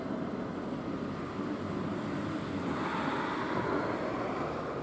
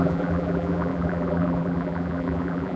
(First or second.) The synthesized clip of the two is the second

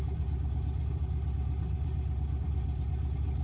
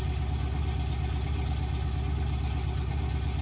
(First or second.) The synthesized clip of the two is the first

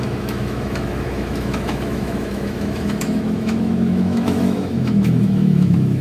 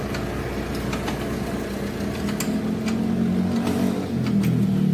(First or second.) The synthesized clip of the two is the first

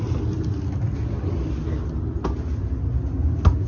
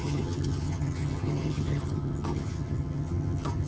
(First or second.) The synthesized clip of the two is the second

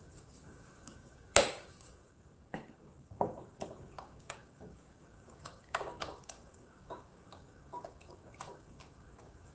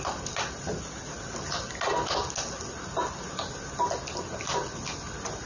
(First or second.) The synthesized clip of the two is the first